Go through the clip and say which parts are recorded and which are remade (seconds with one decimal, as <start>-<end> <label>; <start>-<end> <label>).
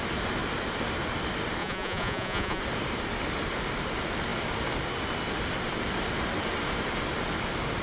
0.0-1.6 recorded; 1.6-2.6 remade; 2.6-7.8 recorded